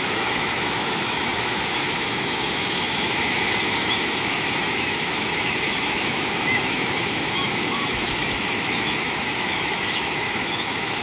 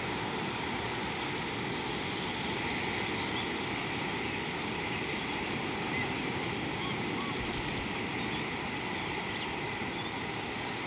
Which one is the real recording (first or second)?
second